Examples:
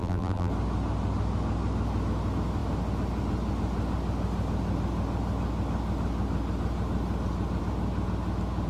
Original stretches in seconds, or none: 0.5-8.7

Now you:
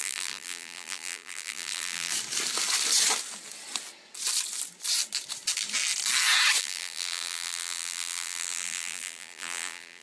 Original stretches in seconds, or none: 2.1-6.6

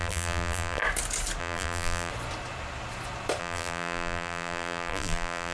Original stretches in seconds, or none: 0.8-1.4; 2.1-3.4

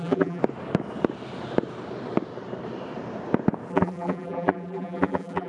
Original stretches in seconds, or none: 0.4-3.7

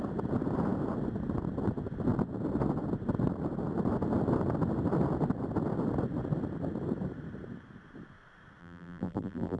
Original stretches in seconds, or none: 0.0-8.6

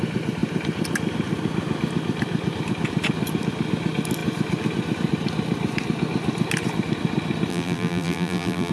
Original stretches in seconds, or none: 0.0-7.5

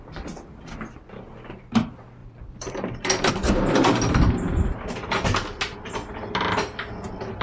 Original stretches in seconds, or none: 0.0-2.2; 3.3-7.4

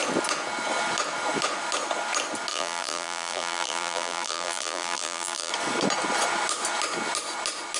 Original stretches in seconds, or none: 0.0-2.5; 5.5-7.8